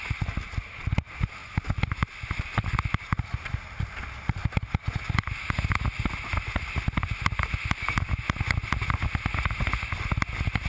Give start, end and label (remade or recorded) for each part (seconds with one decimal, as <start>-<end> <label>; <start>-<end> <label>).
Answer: 0.0-10.7 recorded